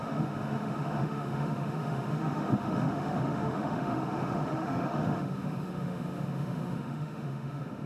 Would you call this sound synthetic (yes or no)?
yes